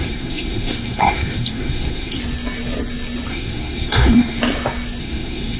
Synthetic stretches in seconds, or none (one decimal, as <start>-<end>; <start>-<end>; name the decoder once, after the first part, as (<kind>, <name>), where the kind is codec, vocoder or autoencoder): 0.0-2.2 (codec, SNAC); 3.3-4.4; 5.0-5.6